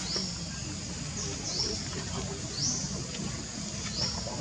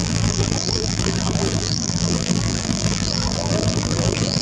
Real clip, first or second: first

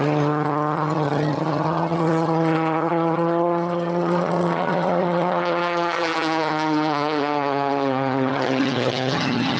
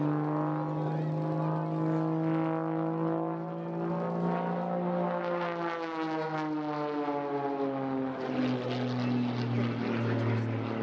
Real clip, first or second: second